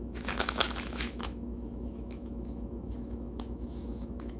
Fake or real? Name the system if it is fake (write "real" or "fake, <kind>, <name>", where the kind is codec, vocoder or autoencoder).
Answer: fake, autoencoder, DAC-VAE